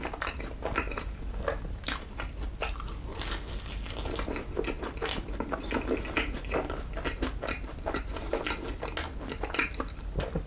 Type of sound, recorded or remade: recorded